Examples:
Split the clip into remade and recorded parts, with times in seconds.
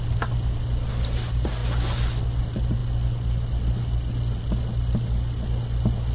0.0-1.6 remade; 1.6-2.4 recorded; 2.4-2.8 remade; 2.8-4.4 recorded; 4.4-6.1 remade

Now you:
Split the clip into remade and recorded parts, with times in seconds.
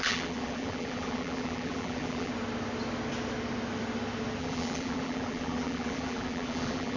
0.0-2.3 remade; 2.3-4.4 recorded; 4.4-7.0 remade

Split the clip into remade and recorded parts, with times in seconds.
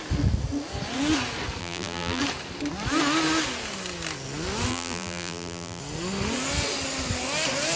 0.0-1.6 recorded; 1.6-2.2 remade; 2.2-4.7 recorded; 4.7-5.8 remade; 5.8-7.8 recorded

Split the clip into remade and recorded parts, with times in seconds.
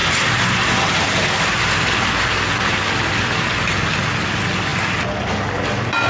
0.0-4.7 recorded; 4.7-6.1 remade